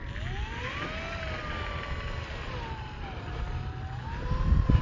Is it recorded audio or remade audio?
recorded